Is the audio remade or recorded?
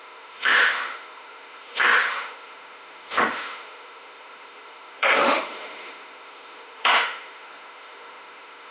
remade